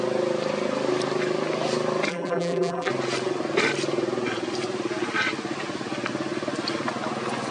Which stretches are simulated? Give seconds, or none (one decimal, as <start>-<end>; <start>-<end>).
2.1-2.9